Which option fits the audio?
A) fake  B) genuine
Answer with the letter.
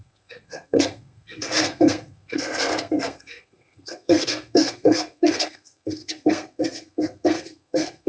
A